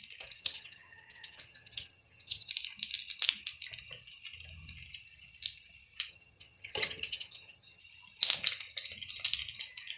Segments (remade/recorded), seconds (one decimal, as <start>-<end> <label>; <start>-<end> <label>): 0.0-0.4 recorded; 0.4-2.5 remade; 2.5-6.1 recorded; 6.1-7.8 remade; 7.8-10.0 recorded